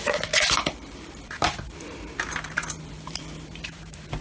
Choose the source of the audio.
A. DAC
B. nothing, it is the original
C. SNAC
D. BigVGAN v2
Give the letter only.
D